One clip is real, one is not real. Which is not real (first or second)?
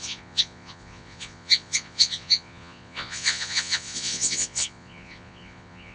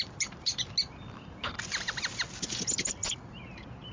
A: first